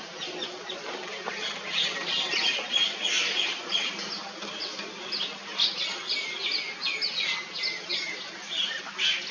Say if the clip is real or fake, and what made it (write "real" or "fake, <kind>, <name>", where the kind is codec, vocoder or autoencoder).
real